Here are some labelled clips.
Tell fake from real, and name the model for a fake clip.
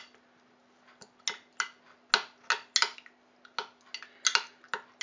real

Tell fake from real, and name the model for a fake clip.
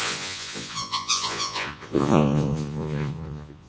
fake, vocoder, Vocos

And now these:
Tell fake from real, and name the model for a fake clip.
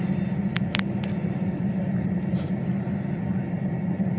real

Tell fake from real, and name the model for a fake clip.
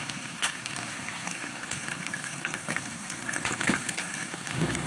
fake, codec, SNAC